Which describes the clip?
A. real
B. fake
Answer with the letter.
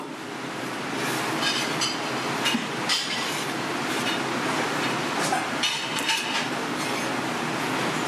A